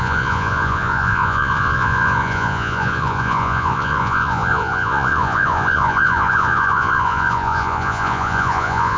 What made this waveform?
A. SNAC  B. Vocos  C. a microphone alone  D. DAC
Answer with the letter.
B